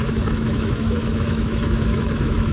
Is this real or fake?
fake